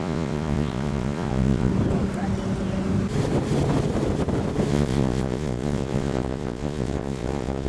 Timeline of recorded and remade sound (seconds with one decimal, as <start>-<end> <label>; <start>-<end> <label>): 0.0-1.7 remade; 1.7-4.7 recorded; 4.7-7.7 remade